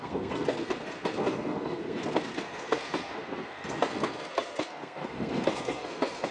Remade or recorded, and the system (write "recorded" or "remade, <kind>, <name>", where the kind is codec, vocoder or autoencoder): remade, codec, SNAC